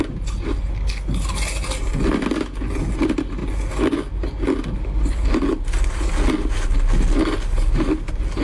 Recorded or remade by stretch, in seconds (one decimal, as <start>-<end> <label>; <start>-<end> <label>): 0.0-8.4 recorded